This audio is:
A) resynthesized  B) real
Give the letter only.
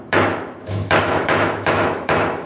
A